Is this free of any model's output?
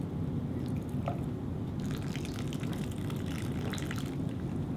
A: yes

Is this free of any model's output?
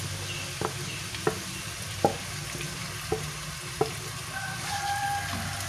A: yes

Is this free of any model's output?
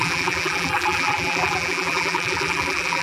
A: no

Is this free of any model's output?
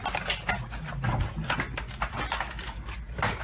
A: yes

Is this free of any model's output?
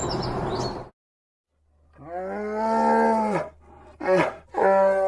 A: yes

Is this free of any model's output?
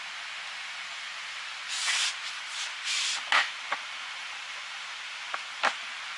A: yes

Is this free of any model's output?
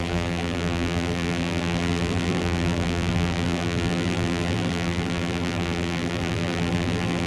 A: no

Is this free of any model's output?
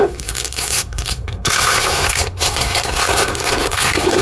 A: no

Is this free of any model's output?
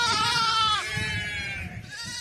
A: no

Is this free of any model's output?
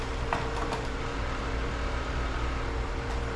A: no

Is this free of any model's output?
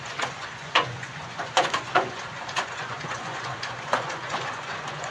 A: no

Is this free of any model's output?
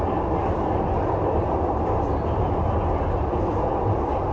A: yes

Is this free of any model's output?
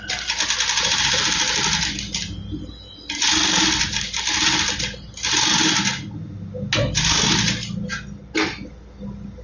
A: yes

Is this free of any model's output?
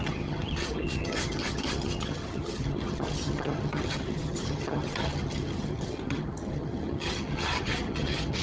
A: no